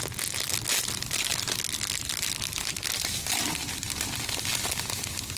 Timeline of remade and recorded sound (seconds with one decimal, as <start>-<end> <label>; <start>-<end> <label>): 0.0-1.3 recorded; 1.3-4.5 remade; 4.5-5.4 recorded